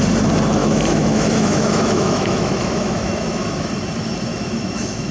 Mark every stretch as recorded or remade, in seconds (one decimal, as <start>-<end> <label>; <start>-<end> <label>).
0.0-0.6 recorded; 0.6-3.7 remade; 3.7-4.3 recorded; 4.3-5.1 remade